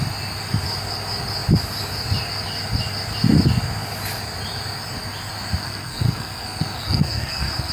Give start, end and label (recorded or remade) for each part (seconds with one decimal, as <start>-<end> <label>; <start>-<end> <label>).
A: 0.0-5.6 recorded; 5.6-7.7 remade